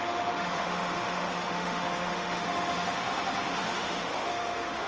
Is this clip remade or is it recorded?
remade